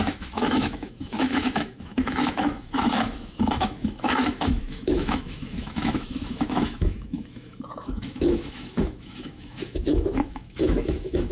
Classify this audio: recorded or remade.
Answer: remade